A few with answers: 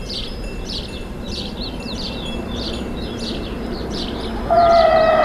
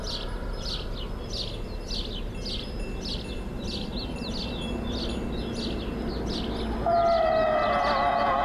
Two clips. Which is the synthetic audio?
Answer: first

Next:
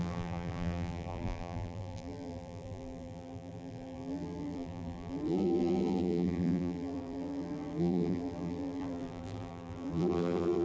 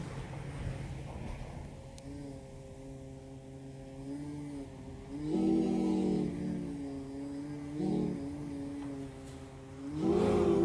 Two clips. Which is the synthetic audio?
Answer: first